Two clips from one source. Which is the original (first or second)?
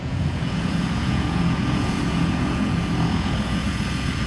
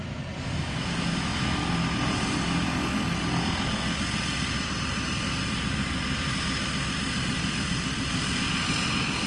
second